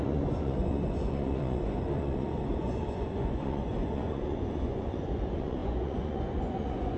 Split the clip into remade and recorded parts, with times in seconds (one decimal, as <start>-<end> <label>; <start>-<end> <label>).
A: 0.0-7.0 remade